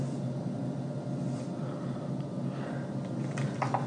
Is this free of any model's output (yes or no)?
yes